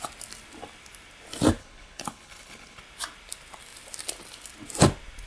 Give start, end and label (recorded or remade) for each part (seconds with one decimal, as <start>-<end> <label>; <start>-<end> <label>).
0.0-1.6 recorded; 1.6-2.8 remade; 2.8-5.3 recorded